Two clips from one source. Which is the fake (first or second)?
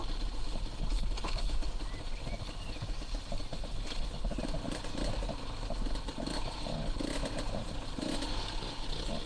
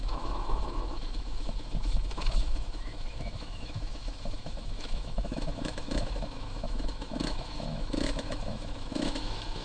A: second